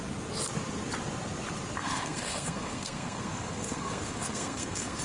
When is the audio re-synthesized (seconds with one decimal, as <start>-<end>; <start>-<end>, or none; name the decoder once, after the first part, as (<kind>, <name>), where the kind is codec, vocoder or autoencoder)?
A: 1.8-5.0 (codec, SNAC)